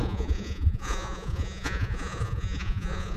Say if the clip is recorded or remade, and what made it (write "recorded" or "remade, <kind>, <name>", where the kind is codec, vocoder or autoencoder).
remade, vocoder, Vocos